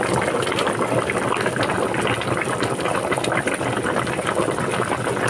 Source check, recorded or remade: recorded